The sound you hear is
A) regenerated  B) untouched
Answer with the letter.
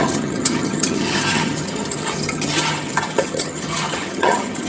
A